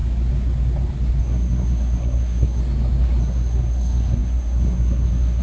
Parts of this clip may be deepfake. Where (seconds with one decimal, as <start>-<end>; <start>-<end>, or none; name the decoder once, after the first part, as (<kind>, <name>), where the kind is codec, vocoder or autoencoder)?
1.2-2.6 (codec, SNAC); 3.2-5.4

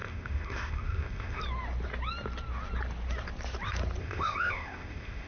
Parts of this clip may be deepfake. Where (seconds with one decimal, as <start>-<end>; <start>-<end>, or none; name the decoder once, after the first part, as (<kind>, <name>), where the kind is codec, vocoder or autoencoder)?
0.0-1.4 (codec, ZipCodec); 4.0-5.3

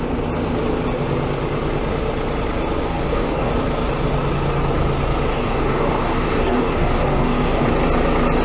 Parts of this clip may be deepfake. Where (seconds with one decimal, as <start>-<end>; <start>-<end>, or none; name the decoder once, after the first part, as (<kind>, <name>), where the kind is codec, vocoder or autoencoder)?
2.8-3.5 (codec, DAC); 5.3-7.7

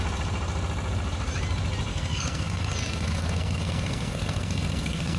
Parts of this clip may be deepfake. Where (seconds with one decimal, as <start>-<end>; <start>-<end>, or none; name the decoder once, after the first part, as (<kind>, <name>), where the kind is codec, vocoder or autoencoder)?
1.9-5.2 (codec, SNAC)